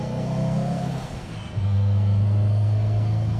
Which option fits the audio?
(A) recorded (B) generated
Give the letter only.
B